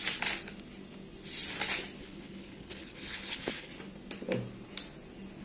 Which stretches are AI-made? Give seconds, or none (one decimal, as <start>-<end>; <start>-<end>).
2.0-3.7